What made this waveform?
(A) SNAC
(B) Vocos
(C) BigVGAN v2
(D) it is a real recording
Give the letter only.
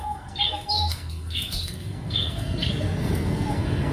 A